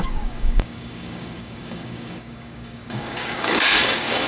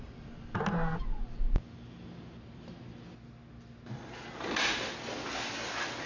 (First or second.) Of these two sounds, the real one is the second